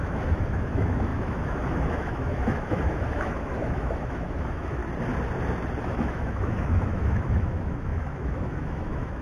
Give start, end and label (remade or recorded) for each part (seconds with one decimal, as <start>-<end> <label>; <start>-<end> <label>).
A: 0.0-4.8 remade; 4.8-5.8 recorded; 5.8-9.2 remade